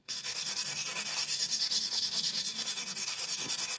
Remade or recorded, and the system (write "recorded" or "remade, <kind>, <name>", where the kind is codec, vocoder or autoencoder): remade, codec, DAC